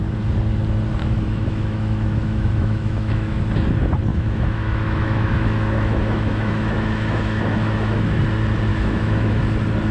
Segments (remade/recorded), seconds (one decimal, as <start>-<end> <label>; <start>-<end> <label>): 0.0-1.0 recorded; 1.0-3.4 remade; 3.4-4.1 recorded; 4.1-8.2 remade; 8.2-8.7 recorded; 8.7-9.4 remade; 9.4-9.9 recorded